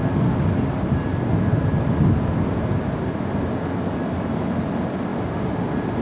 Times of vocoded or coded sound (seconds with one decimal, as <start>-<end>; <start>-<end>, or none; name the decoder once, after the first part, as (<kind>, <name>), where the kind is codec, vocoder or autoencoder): none